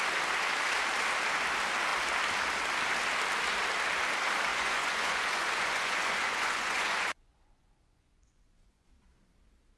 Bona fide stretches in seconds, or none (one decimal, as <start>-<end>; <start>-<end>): 0.0-4.5; 8.9-9.8